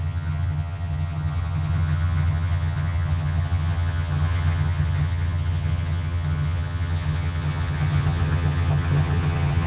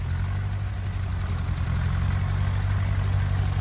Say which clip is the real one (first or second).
second